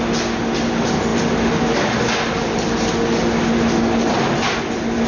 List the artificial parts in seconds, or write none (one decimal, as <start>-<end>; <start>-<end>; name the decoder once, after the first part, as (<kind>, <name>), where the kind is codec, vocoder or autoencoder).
none